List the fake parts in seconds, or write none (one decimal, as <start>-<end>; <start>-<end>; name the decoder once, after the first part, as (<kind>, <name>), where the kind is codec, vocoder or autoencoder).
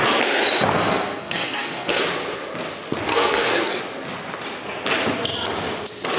0.8-2.0 (codec, SNAC); 3.1-3.8